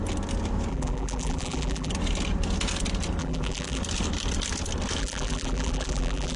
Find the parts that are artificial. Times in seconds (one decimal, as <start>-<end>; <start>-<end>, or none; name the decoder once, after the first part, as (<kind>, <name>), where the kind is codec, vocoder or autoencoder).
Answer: 0.7-1.9 (vocoder, BigVGAN v2); 3.2-3.8; 5.0-6.4